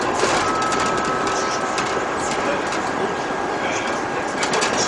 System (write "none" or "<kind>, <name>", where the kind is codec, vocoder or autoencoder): none